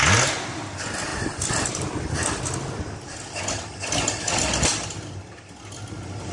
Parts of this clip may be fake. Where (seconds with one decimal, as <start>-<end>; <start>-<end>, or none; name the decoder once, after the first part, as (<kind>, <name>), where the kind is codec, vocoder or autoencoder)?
none